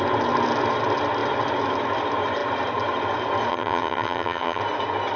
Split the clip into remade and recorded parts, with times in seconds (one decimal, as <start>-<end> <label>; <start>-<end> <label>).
0.0-3.5 recorded; 3.5-4.6 remade; 4.6-5.2 recorded